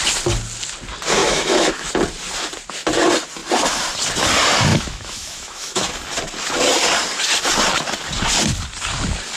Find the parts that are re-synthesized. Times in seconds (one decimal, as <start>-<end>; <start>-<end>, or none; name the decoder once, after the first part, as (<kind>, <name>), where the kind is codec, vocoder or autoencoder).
1.2-1.9 (autoencoder, DAC-VAE); 4.7-5.9